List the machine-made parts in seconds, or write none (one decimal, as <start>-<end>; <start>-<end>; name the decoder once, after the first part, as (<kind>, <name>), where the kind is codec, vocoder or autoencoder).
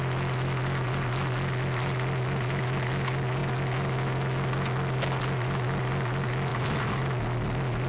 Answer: none